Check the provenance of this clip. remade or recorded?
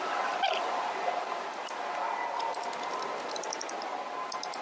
recorded